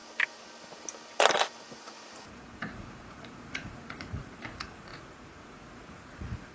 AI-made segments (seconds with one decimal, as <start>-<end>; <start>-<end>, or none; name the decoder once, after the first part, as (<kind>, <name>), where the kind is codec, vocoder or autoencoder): 1.7-6.5 (vocoder, Vocos)